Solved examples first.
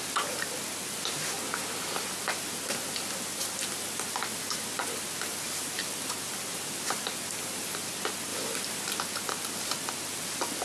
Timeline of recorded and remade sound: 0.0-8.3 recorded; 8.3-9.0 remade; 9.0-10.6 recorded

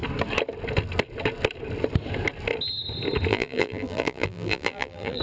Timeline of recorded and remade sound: 0.0-3.3 recorded; 3.3-5.2 remade

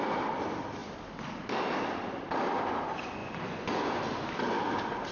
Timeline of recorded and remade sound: 0.0-3.2 recorded; 3.2-4.0 remade; 4.0-5.1 recorded